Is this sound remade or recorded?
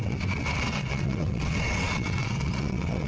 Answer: remade